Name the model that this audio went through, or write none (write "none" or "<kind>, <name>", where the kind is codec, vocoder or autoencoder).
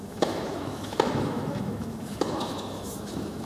autoencoder, DAC-VAE